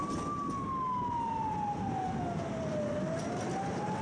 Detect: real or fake real